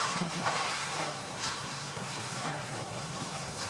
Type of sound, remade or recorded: remade